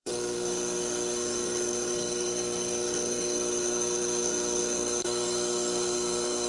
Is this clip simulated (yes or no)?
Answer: yes